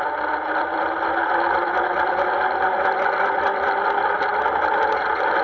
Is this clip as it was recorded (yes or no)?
yes